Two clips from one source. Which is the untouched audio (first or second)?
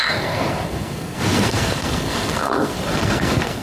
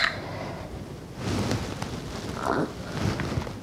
second